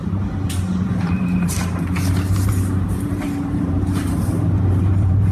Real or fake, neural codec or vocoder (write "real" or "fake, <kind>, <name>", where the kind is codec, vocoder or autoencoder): fake, vocoder, BigVGAN v2